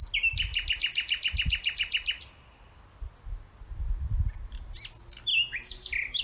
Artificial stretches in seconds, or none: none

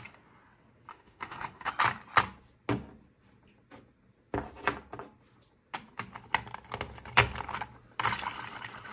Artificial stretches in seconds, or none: 0.9-1.7 (autoencoder, DAC-VAE)

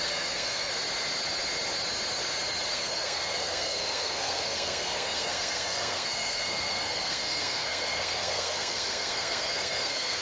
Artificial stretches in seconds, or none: 0.0-0.7 (codec, SNAC); 2.7-10.2

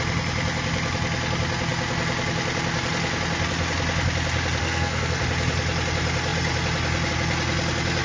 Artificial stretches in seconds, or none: 4.6-5.2 (codec, SNAC)

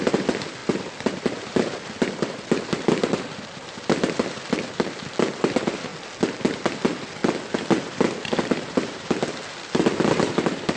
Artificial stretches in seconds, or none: 0.0-5.9 (vocoder, BigVGAN v2); 6.6-7.2; 7.8-10.8

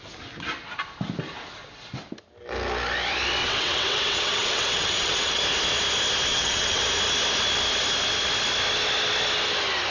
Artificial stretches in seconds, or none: 3.4-5.4 (vocoder, WaveNeXt); 6.3-6.8

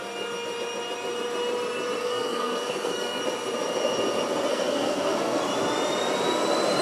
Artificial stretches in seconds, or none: 2.0-3.2 (codec, SNAC); 4.5-5.4

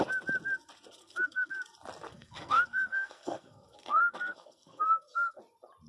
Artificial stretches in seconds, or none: 1.0-1.5 (codec, SNAC); 2.1-5.4